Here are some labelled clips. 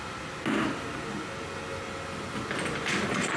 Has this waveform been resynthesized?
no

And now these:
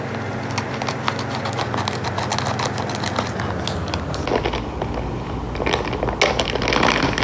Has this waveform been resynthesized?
no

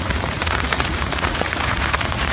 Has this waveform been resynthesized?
yes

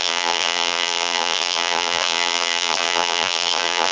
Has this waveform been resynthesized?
yes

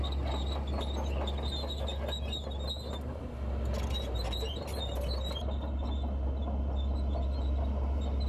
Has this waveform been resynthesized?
no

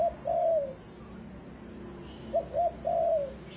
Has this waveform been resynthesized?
no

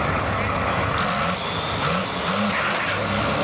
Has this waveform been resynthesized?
no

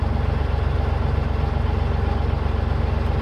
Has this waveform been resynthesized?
no